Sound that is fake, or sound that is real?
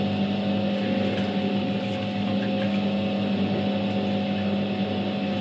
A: real